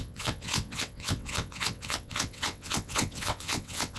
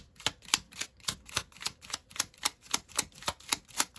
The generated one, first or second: first